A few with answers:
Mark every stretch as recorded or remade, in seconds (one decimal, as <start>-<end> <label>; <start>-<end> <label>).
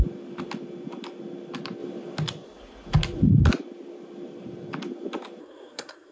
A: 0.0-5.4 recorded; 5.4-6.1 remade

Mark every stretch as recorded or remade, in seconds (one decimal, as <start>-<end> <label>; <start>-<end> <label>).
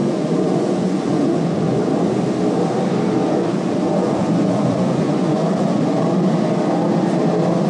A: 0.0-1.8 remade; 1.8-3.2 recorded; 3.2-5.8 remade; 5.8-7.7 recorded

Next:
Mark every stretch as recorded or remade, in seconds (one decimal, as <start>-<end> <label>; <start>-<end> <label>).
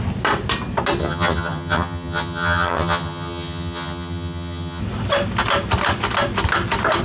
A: 0.0-1.0 recorded; 1.0-4.8 remade; 4.8-7.0 recorded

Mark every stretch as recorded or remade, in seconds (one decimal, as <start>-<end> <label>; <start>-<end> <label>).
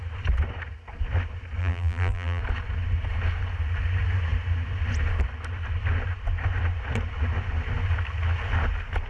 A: 0.0-1.6 recorded; 1.6-2.4 remade; 2.4-9.1 recorded